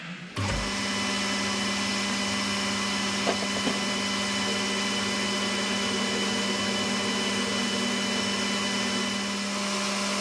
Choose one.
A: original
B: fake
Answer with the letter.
A